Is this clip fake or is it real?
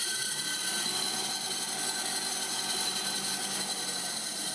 real